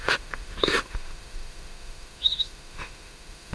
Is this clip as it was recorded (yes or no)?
no